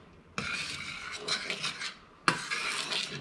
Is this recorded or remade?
recorded